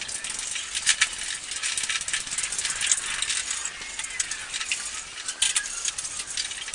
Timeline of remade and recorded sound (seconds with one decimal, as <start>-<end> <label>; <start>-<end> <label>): 0.0-6.7 recorded